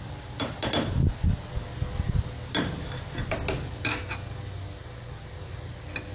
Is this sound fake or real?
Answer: real